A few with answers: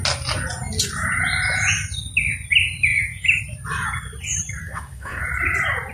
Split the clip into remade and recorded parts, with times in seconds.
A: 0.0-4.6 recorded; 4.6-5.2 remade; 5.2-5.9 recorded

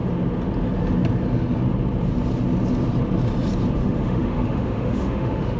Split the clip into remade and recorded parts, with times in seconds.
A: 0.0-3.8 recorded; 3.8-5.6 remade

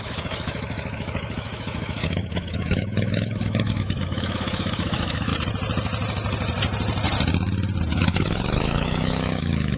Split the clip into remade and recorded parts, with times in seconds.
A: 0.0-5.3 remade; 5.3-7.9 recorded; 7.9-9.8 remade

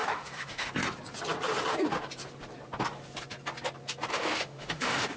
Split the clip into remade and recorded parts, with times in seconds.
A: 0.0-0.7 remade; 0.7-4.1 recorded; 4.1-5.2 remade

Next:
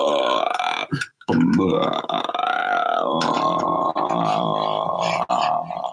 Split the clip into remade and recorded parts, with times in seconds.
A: 0.0-1.1 recorded; 1.1-2.2 remade; 2.2-5.9 recorded

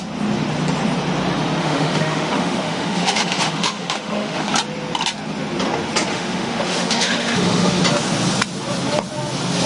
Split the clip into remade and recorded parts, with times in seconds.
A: 0.0-1.6 recorded; 1.6-4.5 remade; 4.5-6.1 recorded; 6.1-7.8 remade; 7.8-9.7 recorded